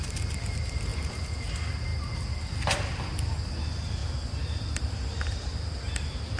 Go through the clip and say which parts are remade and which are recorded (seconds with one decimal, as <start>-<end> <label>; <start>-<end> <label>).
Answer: 0.0-0.9 recorded; 0.9-1.5 remade; 1.5-6.4 recorded